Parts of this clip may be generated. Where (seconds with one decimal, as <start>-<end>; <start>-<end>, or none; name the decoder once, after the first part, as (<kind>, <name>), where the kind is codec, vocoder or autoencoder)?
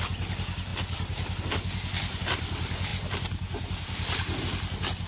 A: none